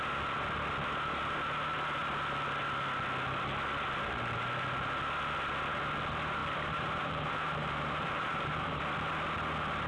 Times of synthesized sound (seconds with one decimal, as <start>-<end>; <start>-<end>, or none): 6.4-8.8